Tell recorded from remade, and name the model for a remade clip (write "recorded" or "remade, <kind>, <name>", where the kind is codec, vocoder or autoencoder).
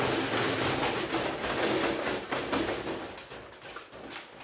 recorded